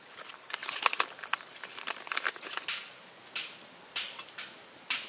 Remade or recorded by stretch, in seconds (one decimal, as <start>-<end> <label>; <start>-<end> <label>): 0.0-5.1 recorded